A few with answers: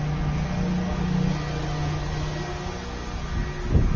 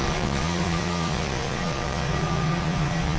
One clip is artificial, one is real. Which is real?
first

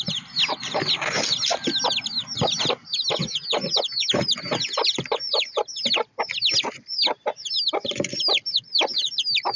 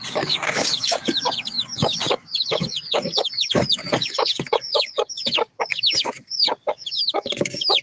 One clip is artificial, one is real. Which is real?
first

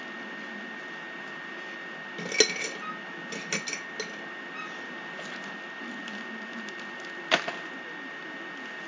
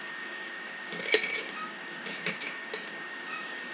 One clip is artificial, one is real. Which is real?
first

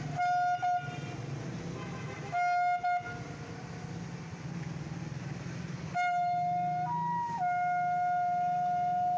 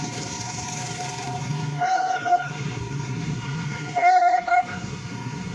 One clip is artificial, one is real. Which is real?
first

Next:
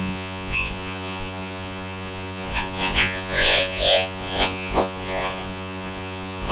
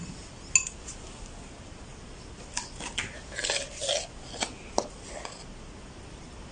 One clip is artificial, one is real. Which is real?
second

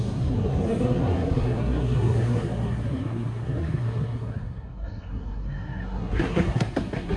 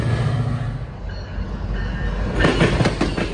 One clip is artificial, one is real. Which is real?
second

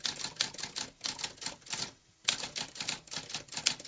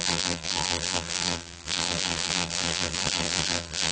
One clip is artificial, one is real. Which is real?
first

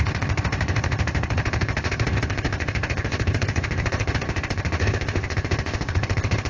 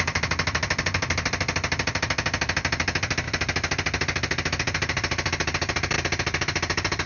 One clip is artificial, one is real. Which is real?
second